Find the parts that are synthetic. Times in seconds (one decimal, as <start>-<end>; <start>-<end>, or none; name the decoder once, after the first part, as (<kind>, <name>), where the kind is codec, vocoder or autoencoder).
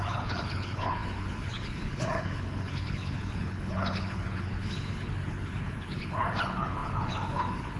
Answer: 0.0-7.8 (codec, HILCodec)